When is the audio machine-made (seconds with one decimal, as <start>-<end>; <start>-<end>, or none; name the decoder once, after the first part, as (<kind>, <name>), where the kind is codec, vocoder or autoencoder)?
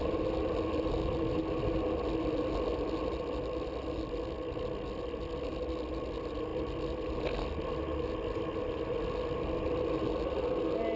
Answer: none